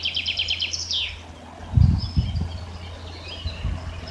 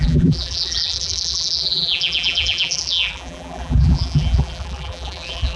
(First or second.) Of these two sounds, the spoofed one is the second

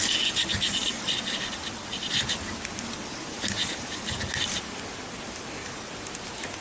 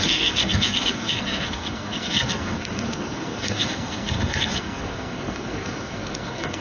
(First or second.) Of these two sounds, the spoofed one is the second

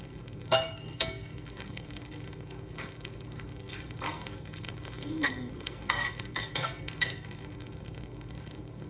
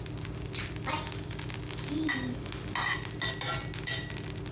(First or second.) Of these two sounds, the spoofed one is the first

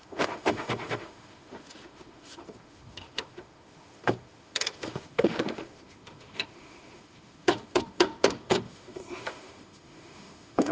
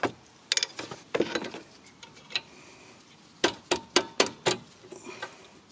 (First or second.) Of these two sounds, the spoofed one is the first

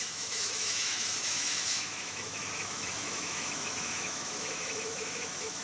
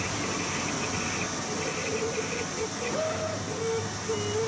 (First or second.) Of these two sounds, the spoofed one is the first